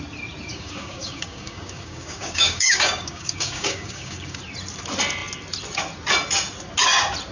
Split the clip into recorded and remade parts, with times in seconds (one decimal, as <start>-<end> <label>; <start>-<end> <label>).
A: 0.0-0.5 recorded; 0.5-4.4 remade; 4.4-7.3 recorded